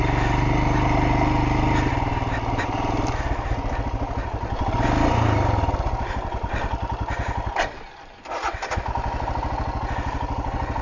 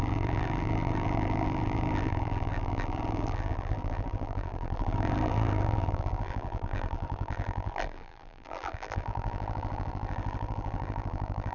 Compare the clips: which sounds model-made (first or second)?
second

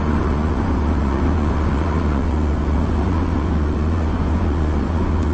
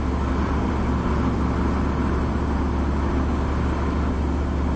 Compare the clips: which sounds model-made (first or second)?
first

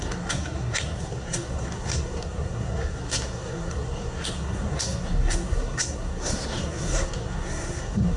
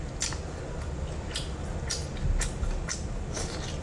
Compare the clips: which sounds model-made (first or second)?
first